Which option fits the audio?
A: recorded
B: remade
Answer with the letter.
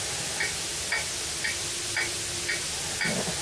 A